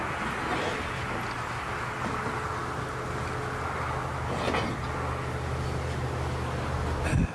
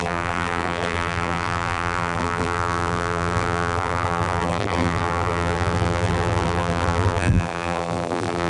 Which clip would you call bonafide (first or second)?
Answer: first